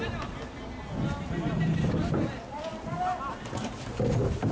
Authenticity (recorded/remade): recorded